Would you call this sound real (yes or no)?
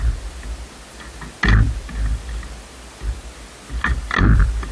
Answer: yes